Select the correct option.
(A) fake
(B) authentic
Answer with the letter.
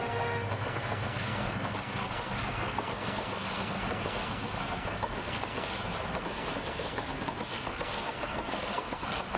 A